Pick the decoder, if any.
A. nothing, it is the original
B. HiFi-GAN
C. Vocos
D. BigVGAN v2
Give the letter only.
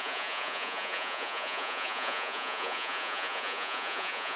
C